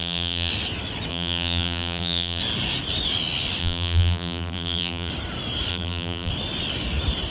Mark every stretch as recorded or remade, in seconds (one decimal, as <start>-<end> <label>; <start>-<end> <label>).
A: 0.0-0.5 remade; 0.5-1.1 recorded; 1.1-2.4 remade; 2.4-3.6 recorded; 3.6-5.1 remade; 5.1-5.7 recorded; 5.7-6.3 remade; 6.3-7.3 recorded